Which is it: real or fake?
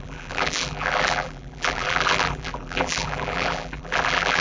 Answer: fake